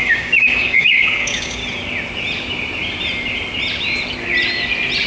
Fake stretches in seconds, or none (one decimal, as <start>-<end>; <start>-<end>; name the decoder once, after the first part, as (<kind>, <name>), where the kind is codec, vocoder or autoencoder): 0.0-1.6 (codec, DAC)